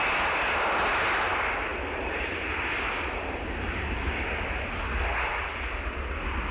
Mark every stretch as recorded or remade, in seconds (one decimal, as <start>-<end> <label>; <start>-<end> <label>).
0.0-6.5 recorded